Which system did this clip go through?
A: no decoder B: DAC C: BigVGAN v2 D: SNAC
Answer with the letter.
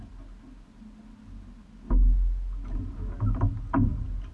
A